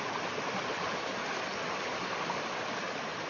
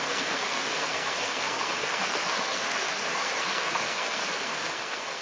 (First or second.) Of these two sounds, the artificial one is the second